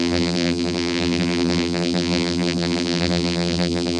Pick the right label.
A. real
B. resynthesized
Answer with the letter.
B